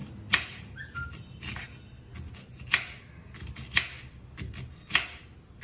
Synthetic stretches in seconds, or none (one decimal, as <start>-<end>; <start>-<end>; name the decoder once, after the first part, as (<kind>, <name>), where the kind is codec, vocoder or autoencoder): 0.0-2.1 (vocoder, BigVGAN v2)

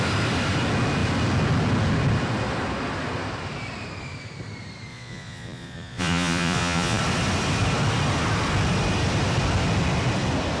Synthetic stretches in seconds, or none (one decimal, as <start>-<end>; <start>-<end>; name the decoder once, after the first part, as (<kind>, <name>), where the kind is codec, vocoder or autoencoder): 4.9-7.0 (vocoder, Vocos)

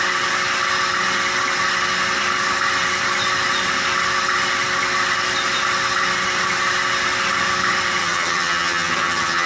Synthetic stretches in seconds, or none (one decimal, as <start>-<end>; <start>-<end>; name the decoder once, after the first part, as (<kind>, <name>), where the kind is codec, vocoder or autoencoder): 8.0-9.5 (vocoder, HiFi-GAN)

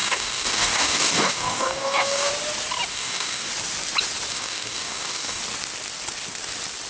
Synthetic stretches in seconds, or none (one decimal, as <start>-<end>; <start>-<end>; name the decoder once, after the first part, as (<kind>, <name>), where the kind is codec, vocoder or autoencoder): 0.0-2.3 (codec, DAC); 2.9-3.5; 4.3-5.4

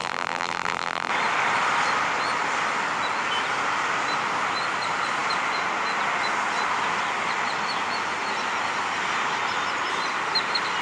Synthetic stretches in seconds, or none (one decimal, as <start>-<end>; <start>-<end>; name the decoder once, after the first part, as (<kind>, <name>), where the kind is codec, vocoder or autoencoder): 0.0-1.1 (vocoder, BigVGAN v2)